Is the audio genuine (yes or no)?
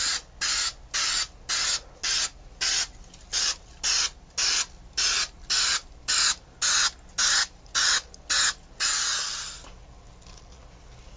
yes